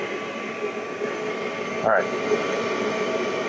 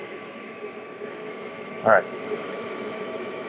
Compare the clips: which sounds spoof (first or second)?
second